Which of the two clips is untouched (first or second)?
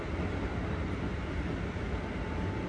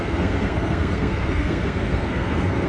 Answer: first